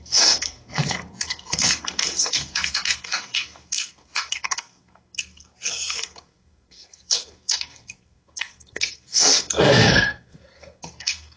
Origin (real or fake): fake